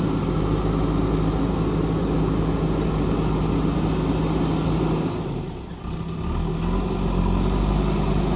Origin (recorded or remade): recorded